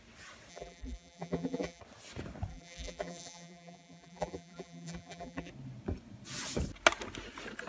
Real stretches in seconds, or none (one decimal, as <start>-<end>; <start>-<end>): 0.0-0.5; 1.8-2.5; 5.5-7.7